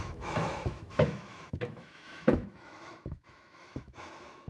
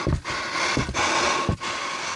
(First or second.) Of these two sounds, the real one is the second